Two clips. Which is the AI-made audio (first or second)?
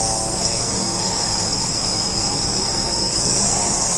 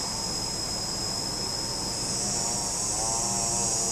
first